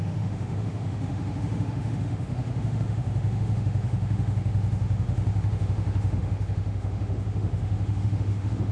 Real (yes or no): no